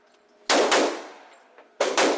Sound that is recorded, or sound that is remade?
recorded